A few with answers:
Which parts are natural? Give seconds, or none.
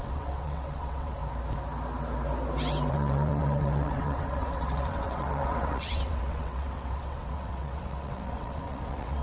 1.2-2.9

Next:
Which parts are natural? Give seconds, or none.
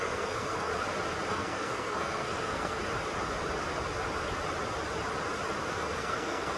0.7-1.3; 2.8-5.6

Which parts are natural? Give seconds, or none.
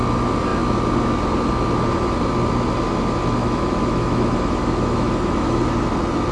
0.0-3.4; 5.6-6.3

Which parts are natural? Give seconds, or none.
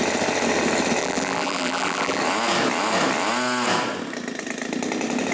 0.0-1.0; 2.2-5.3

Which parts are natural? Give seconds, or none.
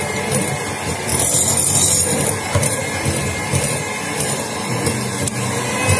0.0-6.0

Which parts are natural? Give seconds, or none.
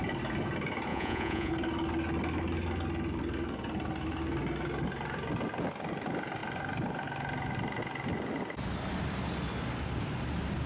0.0-0.9; 1.5-10.7